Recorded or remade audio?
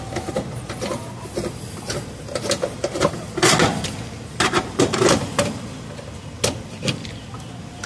recorded